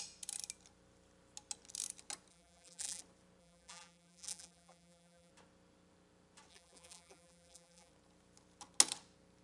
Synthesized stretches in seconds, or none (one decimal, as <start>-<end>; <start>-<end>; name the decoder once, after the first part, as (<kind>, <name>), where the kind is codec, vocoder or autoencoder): 2.3-3.0 (vocoder, BigVGAN v2); 3.4-5.3; 6.5-7.9